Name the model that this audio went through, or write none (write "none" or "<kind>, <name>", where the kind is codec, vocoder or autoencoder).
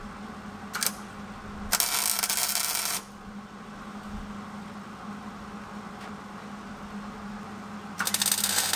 none